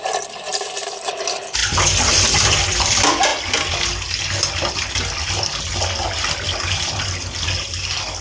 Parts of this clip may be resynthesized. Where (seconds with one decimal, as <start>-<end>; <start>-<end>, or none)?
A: 0.5-1.1; 1.6-2.9